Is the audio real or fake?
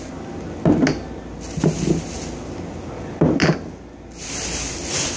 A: real